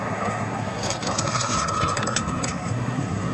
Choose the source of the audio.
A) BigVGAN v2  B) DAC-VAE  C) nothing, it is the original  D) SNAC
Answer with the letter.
D